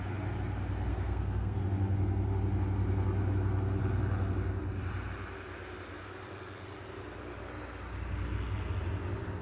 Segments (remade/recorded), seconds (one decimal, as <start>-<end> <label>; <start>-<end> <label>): 0.0-0.9 recorded; 0.9-1.6 remade; 1.6-9.4 recorded